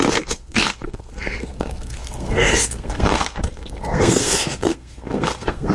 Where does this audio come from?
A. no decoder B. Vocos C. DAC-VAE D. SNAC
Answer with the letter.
D